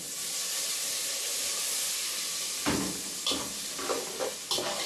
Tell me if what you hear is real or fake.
real